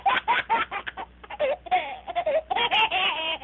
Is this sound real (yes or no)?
yes